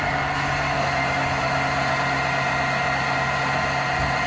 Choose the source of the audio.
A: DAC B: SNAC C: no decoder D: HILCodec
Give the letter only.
C